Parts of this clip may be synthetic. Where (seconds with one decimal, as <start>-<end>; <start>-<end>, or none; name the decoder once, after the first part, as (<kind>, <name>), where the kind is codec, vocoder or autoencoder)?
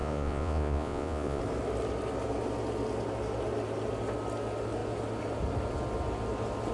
0.0-1.4 (vocoder, Vocos)